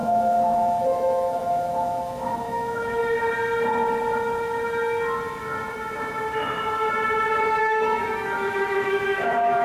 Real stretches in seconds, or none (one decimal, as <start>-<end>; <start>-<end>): 3.0-7.6